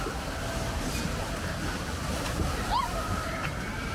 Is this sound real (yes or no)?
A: no